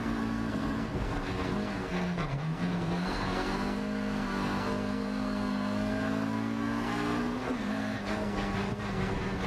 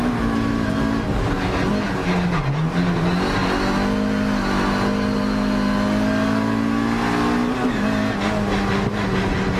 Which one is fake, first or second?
first